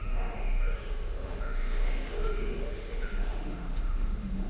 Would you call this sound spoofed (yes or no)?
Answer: yes